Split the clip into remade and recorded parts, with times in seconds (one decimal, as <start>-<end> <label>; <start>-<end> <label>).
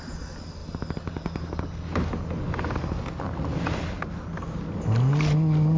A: 0.0-5.8 recorded